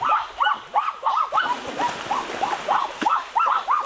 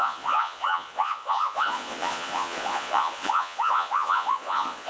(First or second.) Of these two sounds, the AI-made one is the second